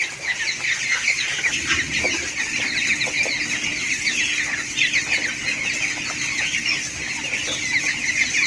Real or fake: real